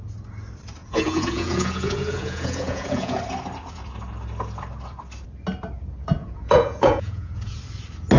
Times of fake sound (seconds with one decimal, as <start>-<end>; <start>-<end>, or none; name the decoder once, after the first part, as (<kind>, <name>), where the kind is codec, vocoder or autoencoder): 0.8-3.2 (vocoder, Vocos); 6.2-7.6